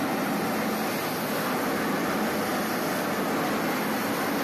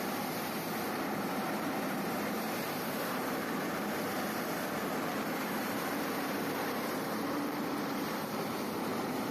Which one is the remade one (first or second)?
second